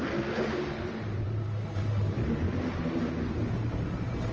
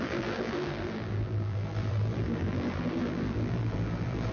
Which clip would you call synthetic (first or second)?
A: second